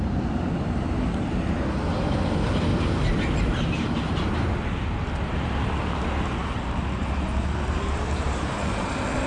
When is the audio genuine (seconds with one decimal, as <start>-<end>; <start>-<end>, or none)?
0.0-2.7; 4.2-6.4; 8.9-9.3